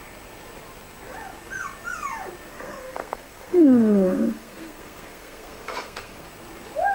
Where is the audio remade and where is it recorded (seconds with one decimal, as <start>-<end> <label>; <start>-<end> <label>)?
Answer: 0.0-2.5 recorded; 2.5-6.3 remade; 6.3-6.9 recorded